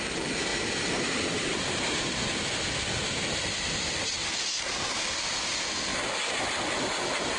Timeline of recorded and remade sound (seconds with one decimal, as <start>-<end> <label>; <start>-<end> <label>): 0.0-0.5 recorded; 0.5-2.1 remade; 2.1-7.4 recorded

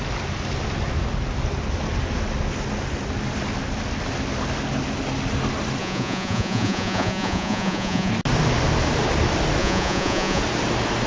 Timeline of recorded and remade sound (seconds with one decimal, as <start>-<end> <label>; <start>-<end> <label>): 0.0-5.8 recorded; 5.8-8.1 remade; 8.1-9.6 recorded; 9.6-10.4 remade; 10.4-11.1 recorded

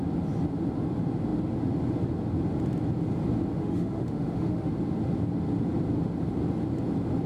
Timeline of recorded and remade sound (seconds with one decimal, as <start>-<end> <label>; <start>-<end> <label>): 0.0-3.6 recorded; 3.6-4.7 remade; 4.7-7.3 recorded

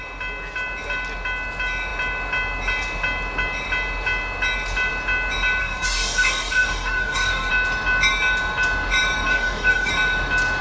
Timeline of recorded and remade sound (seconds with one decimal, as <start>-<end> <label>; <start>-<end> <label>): 0.0-5.6 recorded; 5.6-7.5 remade; 7.5-9.3 recorded; 9.3-9.9 remade; 9.9-10.6 recorded

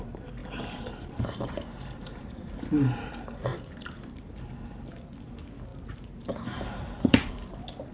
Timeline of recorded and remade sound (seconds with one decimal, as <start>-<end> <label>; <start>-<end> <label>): 0.0-0.4 recorded; 0.4-3.1 remade; 3.1-3.5 recorded; 3.5-4.4 remade; 4.4-5.7 recorded; 5.7-7.3 remade; 7.3-7.9 recorded

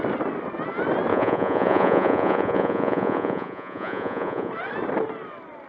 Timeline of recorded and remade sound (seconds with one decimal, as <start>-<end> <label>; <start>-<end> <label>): 0.0-1.1 recorded; 1.1-4.5 remade; 4.5-5.7 recorded

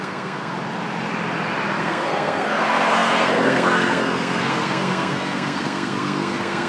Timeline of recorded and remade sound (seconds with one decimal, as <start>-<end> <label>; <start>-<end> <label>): 0.0-0.5 remade; 0.5-1.8 recorded; 1.8-6.7 remade

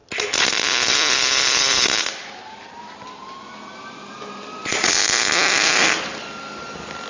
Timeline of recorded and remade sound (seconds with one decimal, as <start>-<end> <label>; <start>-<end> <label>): 0.0-7.1 recorded